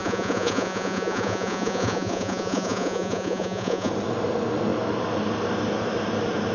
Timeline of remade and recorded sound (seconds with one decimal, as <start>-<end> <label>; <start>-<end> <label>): 0.0-3.9 remade; 3.9-6.5 recorded